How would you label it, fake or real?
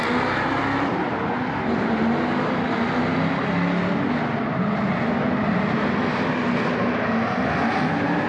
real